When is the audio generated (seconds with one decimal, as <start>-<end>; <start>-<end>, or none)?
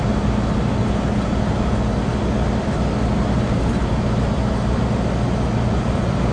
none